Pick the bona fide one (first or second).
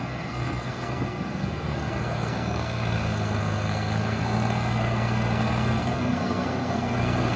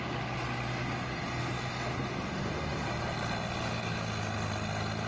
second